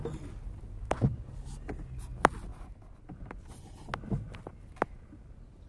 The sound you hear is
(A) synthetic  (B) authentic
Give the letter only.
B